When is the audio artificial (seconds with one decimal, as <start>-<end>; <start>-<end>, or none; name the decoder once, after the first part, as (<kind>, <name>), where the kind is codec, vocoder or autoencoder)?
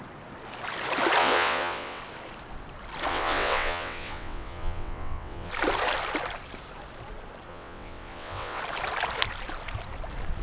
1.2-2.0 (vocoder, WaveNeXt); 3.1-5.5; 7.5-8.6